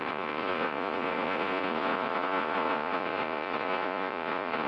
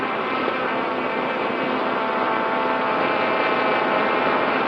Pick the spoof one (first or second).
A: first